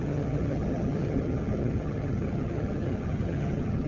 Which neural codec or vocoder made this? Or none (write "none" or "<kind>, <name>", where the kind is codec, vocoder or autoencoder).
vocoder, HiFi-GAN